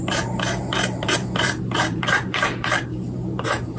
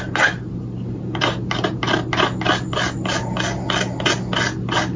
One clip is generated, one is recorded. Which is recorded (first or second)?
second